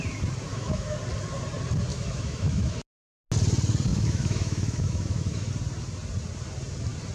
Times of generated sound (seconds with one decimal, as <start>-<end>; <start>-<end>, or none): 0.5-1.0; 1.9-2.7; 3.9-5.5